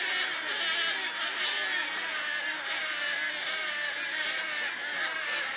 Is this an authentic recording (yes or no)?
yes